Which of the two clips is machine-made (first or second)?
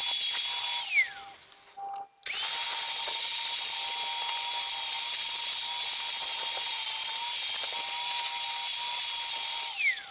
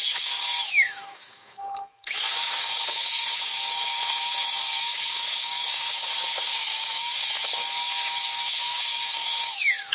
second